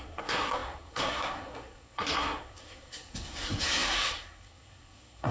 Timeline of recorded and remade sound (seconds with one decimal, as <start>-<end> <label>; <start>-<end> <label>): 0.0-5.3 remade